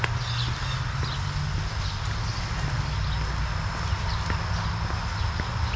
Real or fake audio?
real